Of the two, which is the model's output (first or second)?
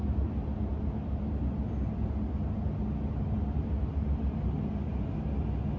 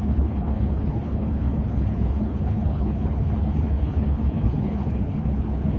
second